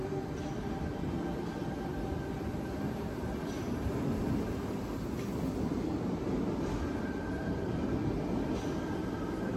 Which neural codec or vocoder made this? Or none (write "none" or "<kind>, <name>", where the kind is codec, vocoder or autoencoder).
none